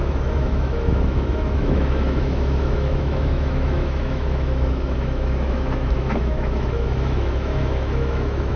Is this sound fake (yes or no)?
yes